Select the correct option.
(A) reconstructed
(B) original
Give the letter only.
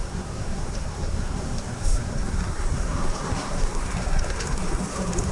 A